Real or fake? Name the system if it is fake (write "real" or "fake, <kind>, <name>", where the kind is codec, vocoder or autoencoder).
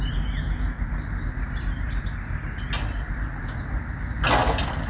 real